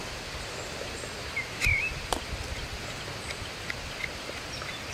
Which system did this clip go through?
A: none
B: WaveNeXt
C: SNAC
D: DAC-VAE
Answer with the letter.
A